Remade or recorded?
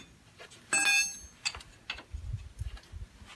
recorded